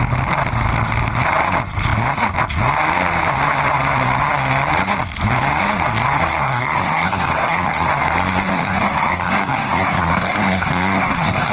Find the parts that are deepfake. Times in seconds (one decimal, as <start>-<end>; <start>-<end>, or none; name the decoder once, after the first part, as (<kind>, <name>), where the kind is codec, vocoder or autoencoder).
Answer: 6.3-7.9 (codec, SNAC); 8.5-11.5